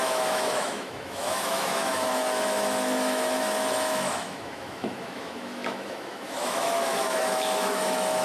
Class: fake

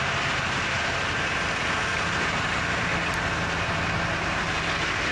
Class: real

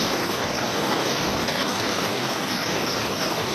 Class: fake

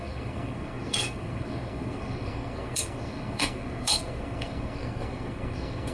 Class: fake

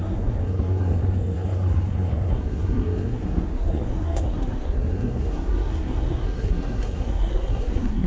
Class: fake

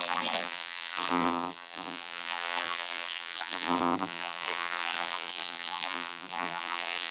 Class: fake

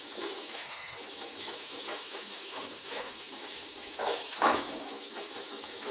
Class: fake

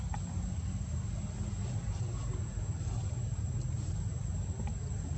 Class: real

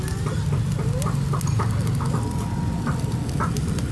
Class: real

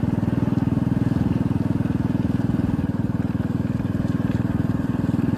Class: real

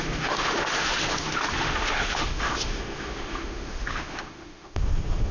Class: fake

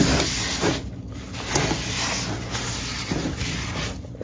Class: real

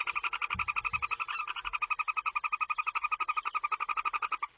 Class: real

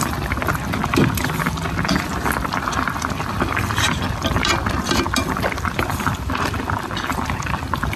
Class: real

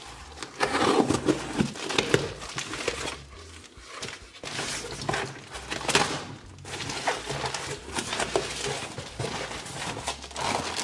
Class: real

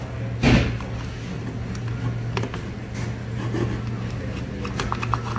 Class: real